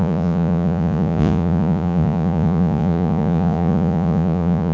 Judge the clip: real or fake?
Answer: fake